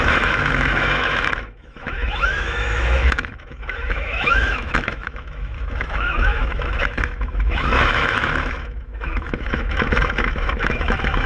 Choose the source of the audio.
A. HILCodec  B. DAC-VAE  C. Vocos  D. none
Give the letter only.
B